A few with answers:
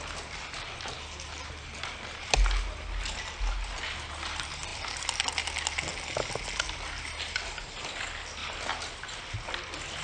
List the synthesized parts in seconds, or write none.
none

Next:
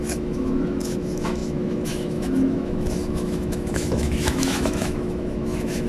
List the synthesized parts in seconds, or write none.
0.0-5.9 (autoencoder, DAC-VAE)

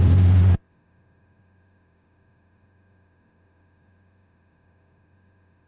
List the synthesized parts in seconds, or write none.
0.0-5.7 (autoencoder, DAC-VAE)